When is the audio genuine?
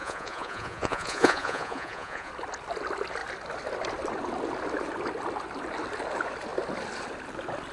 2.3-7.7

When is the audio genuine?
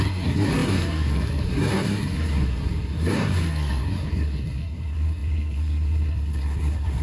none